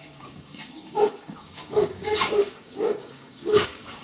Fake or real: fake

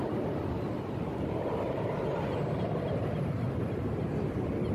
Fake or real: fake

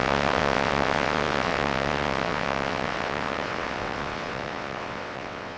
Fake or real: fake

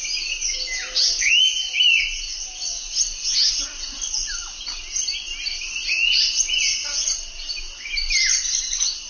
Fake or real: real